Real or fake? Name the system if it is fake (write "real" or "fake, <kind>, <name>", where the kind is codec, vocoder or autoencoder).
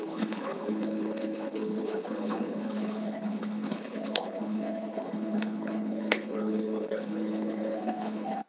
fake, codec, HILCodec